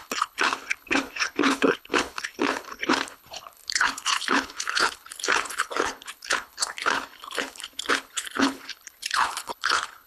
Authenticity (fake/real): fake